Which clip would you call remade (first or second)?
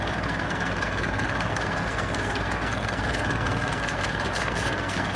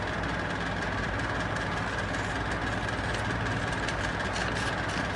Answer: first